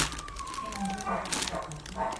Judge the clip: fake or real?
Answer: real